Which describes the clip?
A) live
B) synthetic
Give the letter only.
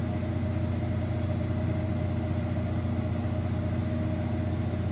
A